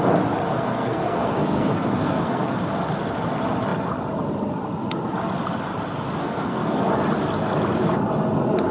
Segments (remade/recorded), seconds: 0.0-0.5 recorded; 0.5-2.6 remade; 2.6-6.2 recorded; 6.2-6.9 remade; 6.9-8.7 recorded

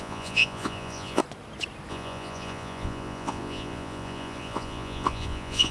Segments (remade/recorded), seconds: 0.0-1.2 remade; 1.2-1.9 recorded; 1.9-5.7 remade

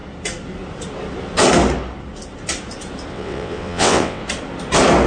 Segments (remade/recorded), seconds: 0.0-3.1 recorded; 3.1-4.2 remade; 4.2-5.1 recorded

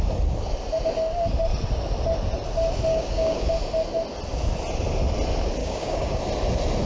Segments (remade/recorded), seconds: 0.0-2.9 recorded; 2.9-3.5 remade; 3.5-5.6 recorded; 5.6-6.2 remade; 6.2-6.9 recorded

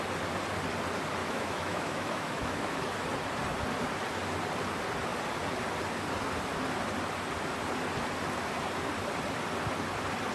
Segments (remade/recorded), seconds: 0.0-1.2 recorded; 1.2-2.8 remade; 2.8-10.3 recorded

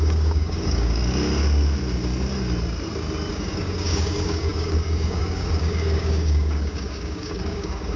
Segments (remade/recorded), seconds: 0.0-1.0 remade; 1.0-3.3 recorded; 3.3-8.0 remade

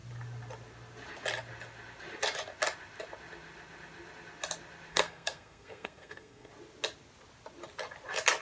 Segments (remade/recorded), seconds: 0.0-4.9 recorded; 4.9-6.5 remade; 6.5-8.4 recorded

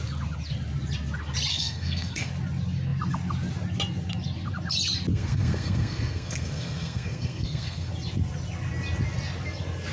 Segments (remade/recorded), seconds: 0.0-1.5 recorded; 1.5-2.3 remade; 2.3-5.1 recorded; 5.1-7.9 remade; 7.9-9.9 recorded